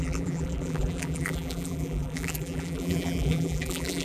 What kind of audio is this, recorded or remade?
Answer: remade